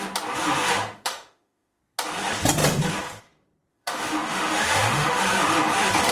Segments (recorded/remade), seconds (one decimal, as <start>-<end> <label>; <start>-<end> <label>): 0.0-0.6 recorded; 0.6-1.8 remade; 1.8-3.7 recorded; 3.7-5.2 remade; 5.2-6.1 recorded